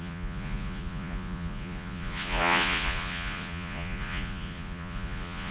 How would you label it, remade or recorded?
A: remade